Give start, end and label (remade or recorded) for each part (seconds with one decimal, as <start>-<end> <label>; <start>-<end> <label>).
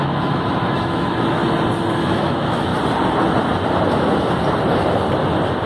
0.0-1.4 remade; 1.4-2.0 recorded; 2.0-2.7 remade; 2.7-5.7 recorded